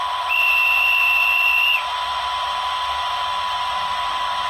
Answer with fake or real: fake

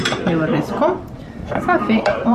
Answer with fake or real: fake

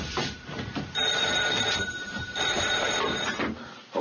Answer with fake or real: fake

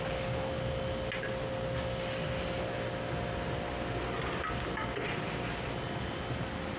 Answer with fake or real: real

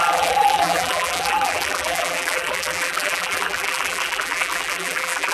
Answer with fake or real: fake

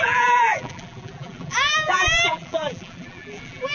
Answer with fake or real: fake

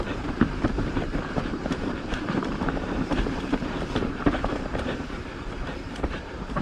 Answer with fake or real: fake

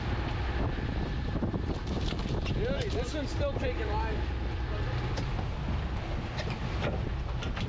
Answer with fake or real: real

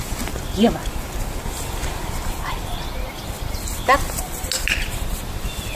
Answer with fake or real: real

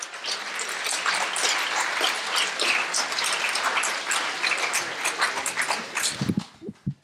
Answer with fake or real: real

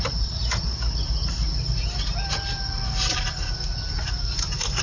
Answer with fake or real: real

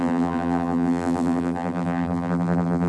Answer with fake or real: fake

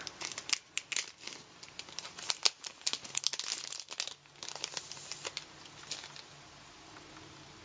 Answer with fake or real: real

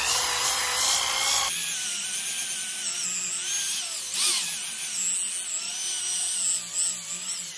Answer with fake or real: real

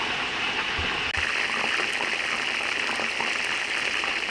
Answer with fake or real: real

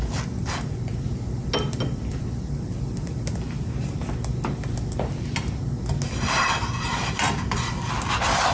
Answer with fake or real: real